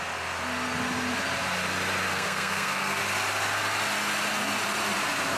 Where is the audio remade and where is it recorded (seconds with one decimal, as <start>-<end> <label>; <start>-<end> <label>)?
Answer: 0.0-2.1 recorded; 2.1-3.0 remade; 3.0-5.4 recorded